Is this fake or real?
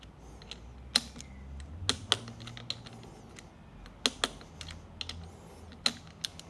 real